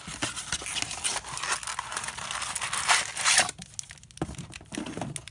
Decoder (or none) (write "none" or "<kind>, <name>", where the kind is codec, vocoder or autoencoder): none